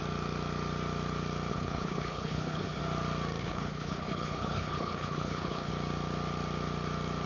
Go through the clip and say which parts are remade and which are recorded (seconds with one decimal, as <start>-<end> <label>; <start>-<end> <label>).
0.0-1.5 recorded; 1.5-2.8 remade; 2.8-3.4 recorded; 3.4-5.7 remade; 5.7-7.3 recorded